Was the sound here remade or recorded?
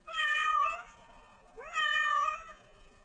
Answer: remade